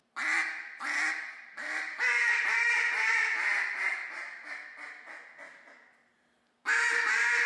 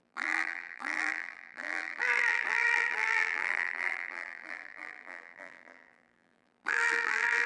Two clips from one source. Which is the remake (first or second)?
second